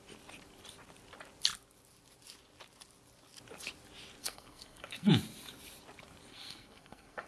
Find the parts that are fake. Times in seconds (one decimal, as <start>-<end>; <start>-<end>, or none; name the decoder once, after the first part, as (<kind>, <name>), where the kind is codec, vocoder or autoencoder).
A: 4.2-5.1 (codec, SNAC); 6.3-7.3